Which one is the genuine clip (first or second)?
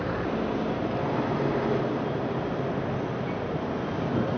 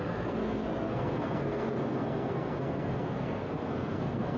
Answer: first